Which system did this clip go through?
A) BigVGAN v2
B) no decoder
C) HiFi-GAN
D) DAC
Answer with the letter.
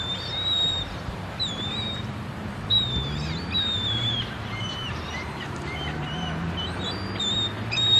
A